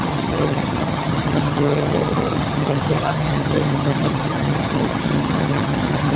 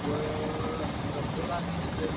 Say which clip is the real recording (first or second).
second